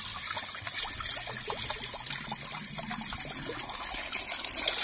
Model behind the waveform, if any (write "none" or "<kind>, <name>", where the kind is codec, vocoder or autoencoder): none